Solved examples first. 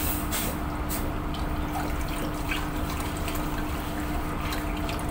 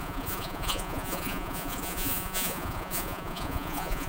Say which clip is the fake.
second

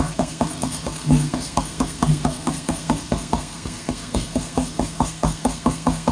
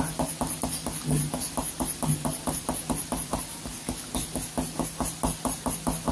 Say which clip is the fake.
first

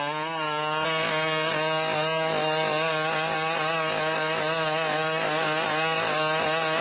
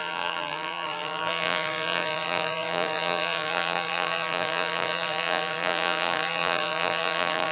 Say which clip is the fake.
second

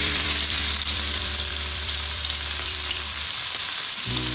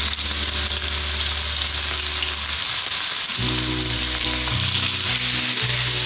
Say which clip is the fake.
first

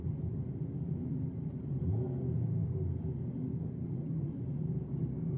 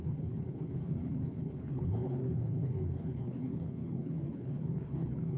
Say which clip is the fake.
second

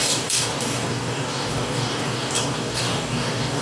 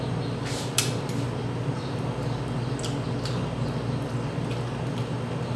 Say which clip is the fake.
first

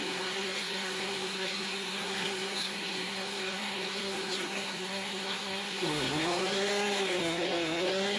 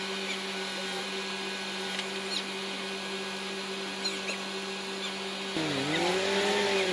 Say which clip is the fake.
first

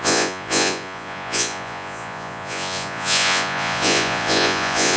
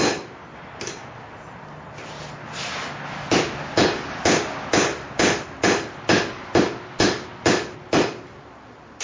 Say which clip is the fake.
first